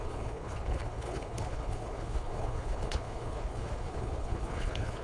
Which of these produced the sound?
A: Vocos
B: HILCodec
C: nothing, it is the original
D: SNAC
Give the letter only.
B